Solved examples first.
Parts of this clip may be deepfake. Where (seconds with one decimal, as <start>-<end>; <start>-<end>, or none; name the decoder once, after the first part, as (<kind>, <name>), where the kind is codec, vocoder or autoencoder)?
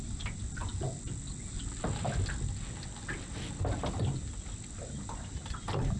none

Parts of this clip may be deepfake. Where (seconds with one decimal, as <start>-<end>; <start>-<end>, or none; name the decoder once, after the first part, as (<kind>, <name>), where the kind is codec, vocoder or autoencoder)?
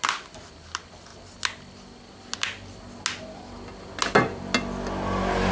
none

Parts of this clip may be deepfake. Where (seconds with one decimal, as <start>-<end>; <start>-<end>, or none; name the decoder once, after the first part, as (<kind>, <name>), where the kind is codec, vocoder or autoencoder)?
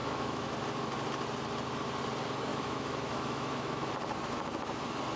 0.0-0.5 (autoencoder, DAC-VAE); 2.5-3.9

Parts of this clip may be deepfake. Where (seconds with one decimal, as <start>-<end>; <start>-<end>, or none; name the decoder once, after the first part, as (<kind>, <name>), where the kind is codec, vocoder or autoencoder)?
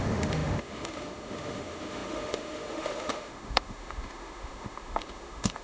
0.0-5.6 (autoencoder, DAC-VAE)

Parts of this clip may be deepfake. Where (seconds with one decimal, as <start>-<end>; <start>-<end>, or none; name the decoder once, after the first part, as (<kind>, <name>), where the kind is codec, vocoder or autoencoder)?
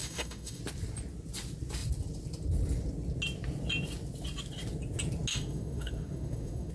0.0-0.6 (autoencoder, DAC-VAE); 5.3-6.7